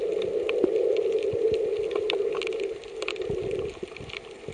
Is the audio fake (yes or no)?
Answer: no